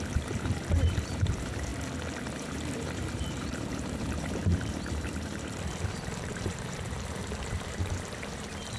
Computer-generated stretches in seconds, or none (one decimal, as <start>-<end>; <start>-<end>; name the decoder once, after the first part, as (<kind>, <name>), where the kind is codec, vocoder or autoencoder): 0.0-1.7 (vocoder, BigVGAN v2); 2.3-8.8